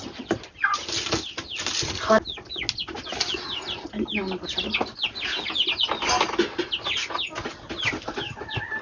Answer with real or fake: real